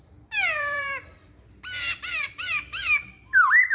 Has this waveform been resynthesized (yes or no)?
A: yes